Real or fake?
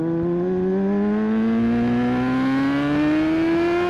real